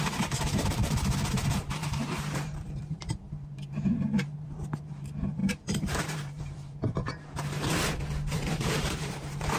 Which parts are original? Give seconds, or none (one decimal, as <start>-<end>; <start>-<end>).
7.7-8.6

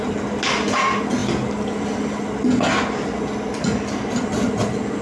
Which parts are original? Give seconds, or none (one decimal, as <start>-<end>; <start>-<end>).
0.0-5.0

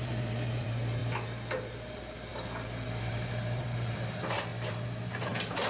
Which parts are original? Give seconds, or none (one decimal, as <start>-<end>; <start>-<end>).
1.0-3.0

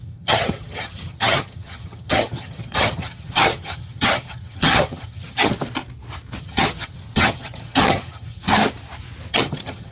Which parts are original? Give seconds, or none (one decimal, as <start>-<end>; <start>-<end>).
5.5-6.4; 8.6-9.3